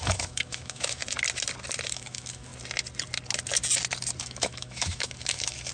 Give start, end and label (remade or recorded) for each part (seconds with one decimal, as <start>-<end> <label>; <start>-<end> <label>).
0.0-1.0 remade; 1.0-1.9 recorded; 1.9-2.5 remade; 2.5-4.2 recorded; 4.2-5.7 remade